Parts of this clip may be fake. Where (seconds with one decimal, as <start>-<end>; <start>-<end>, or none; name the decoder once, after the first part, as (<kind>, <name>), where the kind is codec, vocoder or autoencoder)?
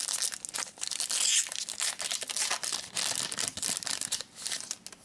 none